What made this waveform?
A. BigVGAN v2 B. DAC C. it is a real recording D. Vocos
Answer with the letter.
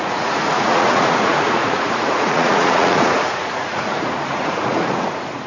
D